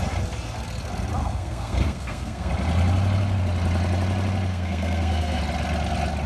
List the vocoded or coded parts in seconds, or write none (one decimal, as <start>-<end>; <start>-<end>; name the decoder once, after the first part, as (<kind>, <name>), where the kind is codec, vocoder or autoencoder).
1.2-2.5 (codec, SNAC); 4.5-5.4